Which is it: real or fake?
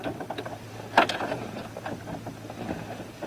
real